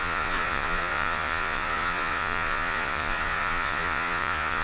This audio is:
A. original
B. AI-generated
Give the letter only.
B